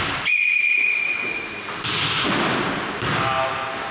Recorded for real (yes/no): yes